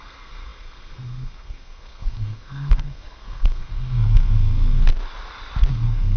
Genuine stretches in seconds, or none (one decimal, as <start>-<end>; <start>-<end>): 4.9-5.7